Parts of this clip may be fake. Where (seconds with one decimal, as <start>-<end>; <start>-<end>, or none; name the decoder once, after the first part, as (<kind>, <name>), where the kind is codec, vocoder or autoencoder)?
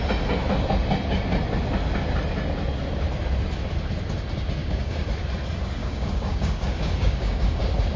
4.6-5.1 (codec, DAC); 5.8-7.6